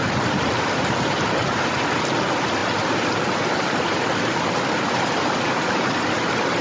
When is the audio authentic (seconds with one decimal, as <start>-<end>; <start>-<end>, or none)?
0.0-6.6